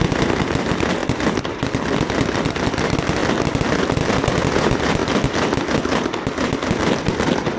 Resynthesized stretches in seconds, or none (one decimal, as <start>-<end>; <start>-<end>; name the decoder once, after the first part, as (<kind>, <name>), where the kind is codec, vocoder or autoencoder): none